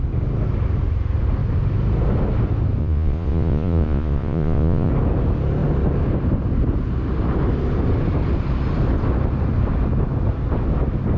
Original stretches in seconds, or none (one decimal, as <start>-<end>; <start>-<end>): 0.0-2.8; 4.9-11.2